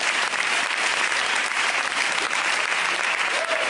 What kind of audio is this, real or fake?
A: fake